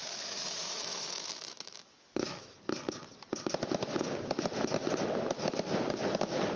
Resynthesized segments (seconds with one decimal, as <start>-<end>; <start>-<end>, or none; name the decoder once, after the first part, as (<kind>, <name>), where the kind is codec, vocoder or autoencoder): 0.0-2.5 (autoencoder, DAC-VAE)